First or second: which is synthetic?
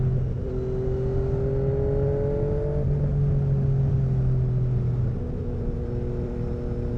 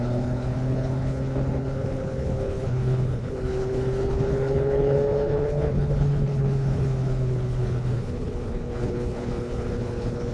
second